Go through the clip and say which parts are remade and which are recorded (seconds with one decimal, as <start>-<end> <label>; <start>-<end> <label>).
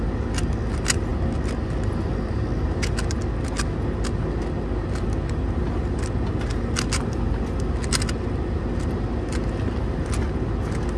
0.0-11.0 recorded